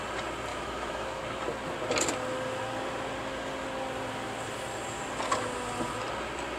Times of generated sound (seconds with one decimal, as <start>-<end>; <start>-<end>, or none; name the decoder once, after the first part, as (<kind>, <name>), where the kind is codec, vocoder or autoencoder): 0.5-1.2 (autoencoder, DAC-VAE)